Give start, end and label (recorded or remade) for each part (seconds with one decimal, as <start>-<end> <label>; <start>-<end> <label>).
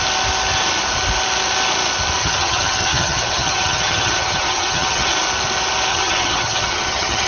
0.0-2.2 recorded; 2.2-5.1 remade; 5.1-5.9 recorded; 5.9-7.3 remade